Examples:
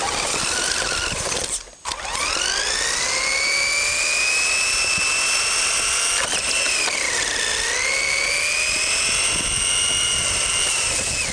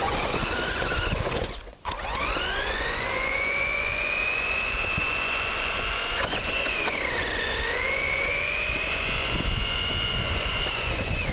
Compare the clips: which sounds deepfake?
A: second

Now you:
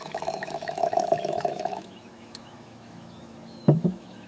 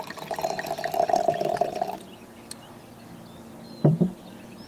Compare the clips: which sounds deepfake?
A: first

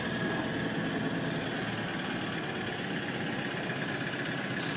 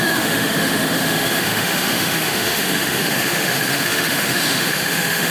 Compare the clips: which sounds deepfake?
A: second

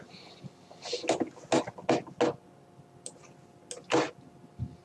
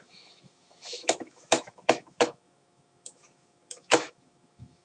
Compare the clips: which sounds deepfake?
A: second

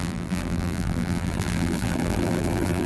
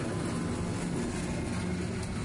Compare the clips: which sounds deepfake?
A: first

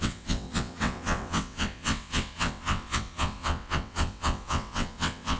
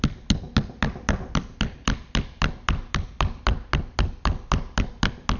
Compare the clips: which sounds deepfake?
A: first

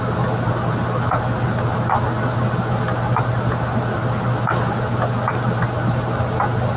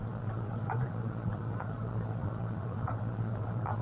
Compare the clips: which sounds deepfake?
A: second